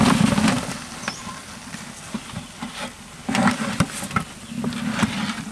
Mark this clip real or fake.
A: real